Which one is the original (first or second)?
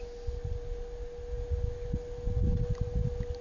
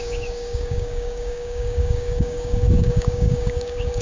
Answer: first